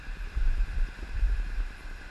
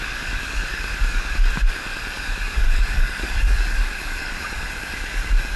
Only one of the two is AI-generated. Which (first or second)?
second